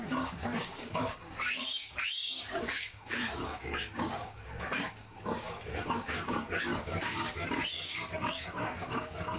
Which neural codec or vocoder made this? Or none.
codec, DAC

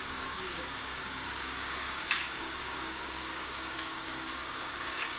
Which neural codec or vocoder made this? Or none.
codec, DAC